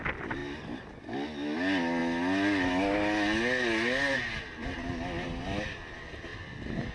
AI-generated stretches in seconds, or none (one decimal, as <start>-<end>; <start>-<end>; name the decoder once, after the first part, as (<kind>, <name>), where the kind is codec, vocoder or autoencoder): none